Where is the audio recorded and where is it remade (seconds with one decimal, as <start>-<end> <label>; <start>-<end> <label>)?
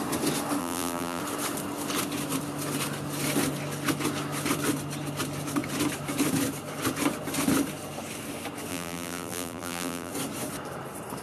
0.0-0.6 recorded; 0.6-1.2 remade; 1.2-8.7 recorded; 8.7-10.1 remade; 10.1-11.2 recorded